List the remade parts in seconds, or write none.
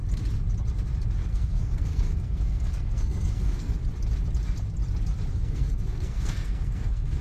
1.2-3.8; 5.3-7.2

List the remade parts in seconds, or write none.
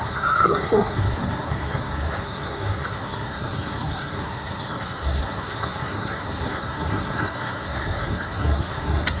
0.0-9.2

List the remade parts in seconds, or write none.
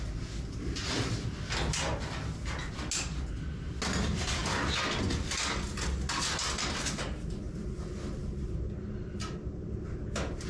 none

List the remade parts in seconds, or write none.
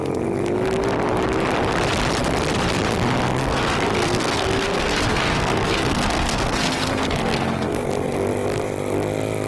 3.4-7.9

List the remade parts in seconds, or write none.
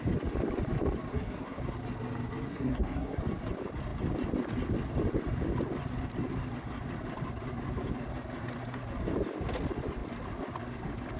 1.1-1.6; 2.5-3.2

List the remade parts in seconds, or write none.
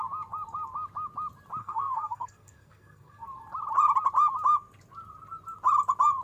1.6-3.2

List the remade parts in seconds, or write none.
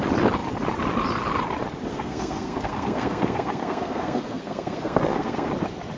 1.9-5.5